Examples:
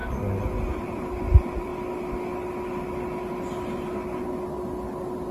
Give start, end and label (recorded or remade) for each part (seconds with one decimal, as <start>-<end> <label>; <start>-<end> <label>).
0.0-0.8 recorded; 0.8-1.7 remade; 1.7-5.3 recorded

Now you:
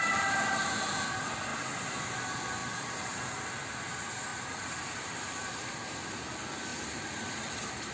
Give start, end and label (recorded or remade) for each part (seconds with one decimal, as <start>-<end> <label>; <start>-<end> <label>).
0.0-2.6 recorded; 2.6-3.2 remade; 3.2-4.3 recorded; 4.3-6.1 remade; 6.1-6.7 recorded; 6.7-7.9 remade

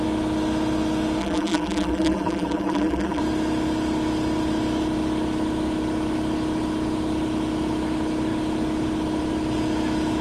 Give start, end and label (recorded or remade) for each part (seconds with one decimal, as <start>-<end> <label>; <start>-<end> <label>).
0.0-1.2 recorded; 1.2-3.2 remade; 3.2-10.2 recorded

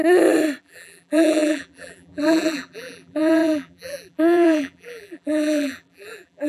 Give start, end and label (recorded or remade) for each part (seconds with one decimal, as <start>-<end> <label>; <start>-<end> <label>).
0.0-0.6 recorded; 0.6-6.5 remade

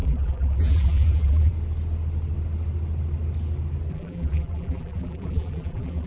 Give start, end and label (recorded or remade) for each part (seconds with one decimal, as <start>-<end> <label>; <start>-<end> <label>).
0.0-1.5 remade; 1.5-3.9 recorded; 3.9-6.1 remade

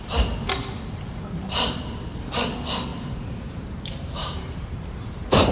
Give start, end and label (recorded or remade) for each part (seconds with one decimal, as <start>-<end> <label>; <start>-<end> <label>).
0.0-2.9 recorded; 2.9-5.5 remade

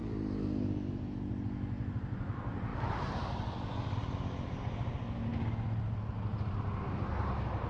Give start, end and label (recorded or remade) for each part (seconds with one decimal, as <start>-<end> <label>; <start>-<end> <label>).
0.0-1.4 remade; 1.4-2.7 recorded; 2.7-3.3 remade; 3.3-7.7 recorded